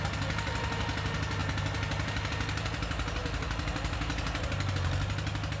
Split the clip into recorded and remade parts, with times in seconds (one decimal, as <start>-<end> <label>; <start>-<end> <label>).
0.0-5.6 recorded